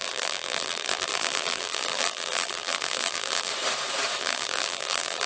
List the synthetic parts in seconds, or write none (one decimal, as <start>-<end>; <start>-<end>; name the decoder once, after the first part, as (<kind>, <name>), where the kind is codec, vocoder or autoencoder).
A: 0.0-3.5 (vocoder, BigVGAN v2); 4.2-5.3